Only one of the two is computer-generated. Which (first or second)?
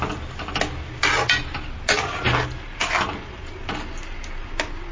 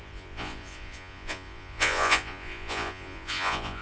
second